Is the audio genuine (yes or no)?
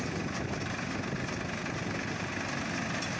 yes